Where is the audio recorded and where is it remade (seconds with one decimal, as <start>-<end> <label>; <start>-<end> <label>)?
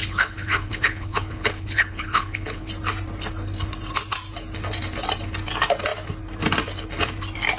0.0-2.7 remade; 2.7-7.6 recorded